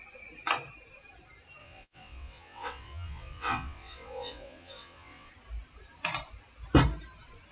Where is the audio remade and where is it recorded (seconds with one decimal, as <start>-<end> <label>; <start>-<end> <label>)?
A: 0.0-1.6 recorded; 1.6-5.3 remade; 5.3-7.5 recorded